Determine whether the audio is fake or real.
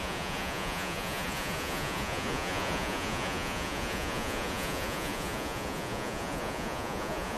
fake